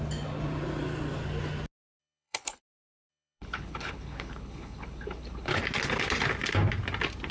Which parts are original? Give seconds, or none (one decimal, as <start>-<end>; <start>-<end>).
0.0-2.0; 2.6-3.1; 5.6-7.3